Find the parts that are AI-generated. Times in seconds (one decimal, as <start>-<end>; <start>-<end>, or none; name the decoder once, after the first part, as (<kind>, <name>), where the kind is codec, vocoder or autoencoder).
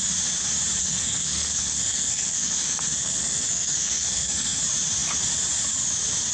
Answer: 0.8-4.6 (codec, SNAC)